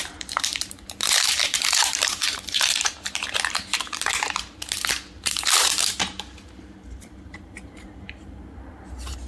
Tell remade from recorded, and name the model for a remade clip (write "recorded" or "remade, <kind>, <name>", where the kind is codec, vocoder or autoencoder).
remade, vocoder, BigVGAN v2